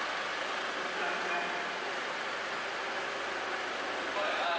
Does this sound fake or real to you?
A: real